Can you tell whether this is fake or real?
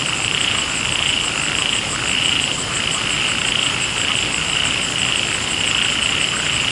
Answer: real